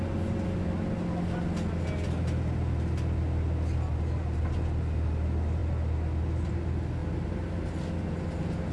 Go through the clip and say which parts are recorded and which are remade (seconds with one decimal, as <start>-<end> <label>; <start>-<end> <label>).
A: 0.0-8.7 recorded